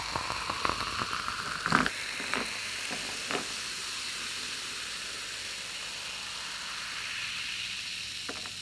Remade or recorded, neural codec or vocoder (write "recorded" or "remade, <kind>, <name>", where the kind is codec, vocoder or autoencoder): recorded